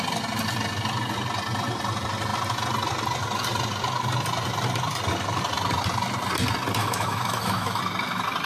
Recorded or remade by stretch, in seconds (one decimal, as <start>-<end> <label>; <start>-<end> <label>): 0.0-6.8 recorded; 6.8-7.8 remade; 7.8-8.5 recorded

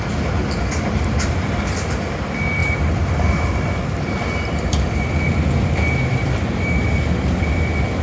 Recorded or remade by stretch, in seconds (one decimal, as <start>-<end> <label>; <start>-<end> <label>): 0.0-2.6 recorded; 2.6-7.4 remade; 7.4-8.0 recorded

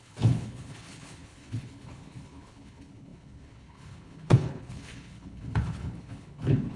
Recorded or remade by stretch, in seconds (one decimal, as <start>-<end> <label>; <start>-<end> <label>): 0.0-6.8 remade

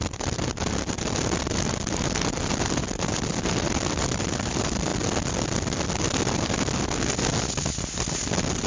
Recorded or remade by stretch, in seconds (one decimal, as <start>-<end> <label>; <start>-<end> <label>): 0.0-4.9 remade; 4.9-8.7 recorded

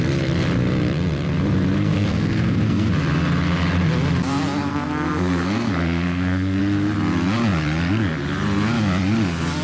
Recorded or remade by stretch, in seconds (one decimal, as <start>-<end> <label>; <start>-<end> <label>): 0.0-1.8 recorded; 1.8-2.9 remade; 2.9-4.7 recorded; 4.7-6.6 remade; 6.6-9.6 recorded